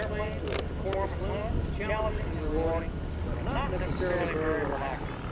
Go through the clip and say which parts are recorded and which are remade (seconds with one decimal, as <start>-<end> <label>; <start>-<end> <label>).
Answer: 0.0-5.3 recorded